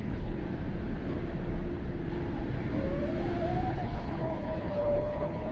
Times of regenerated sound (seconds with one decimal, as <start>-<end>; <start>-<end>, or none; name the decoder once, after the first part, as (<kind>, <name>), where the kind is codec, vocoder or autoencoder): 0.0-0.4 (codec, HILCodec); 3.7-5.5